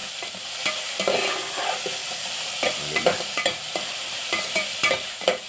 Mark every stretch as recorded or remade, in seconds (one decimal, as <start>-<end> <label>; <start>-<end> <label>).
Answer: 0.0-2.0 recorded; 2.0-5.5 remade